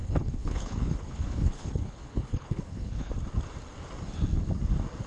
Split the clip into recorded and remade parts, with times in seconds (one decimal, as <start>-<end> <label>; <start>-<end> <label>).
0.0-3.1 remade; 3.1-5.1 recorded